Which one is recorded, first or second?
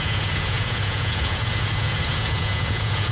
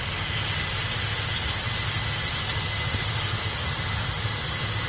second